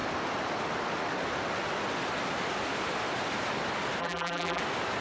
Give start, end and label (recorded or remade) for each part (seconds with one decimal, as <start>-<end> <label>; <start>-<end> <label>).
0.0-4.0 recorded; 4.0-4.6 remade; 4.6-5.0 recorded